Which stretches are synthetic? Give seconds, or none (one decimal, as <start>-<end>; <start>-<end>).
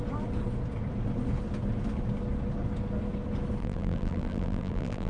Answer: 3.6-5.1